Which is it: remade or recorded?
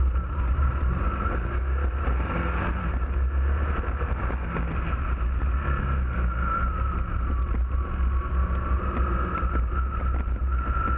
recorded